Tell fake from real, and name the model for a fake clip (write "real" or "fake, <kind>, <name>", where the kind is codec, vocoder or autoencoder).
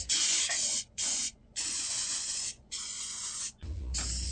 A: fake, vocoder, Vocos